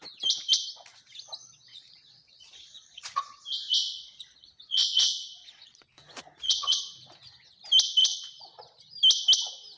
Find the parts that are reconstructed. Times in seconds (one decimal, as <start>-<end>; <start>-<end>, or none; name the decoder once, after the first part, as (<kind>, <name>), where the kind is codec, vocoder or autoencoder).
1.7-3.4 (vocoder, Vocos); 3.8-6.8; 8.0-8.8